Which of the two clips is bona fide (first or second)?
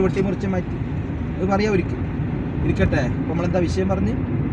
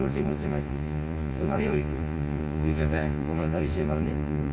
first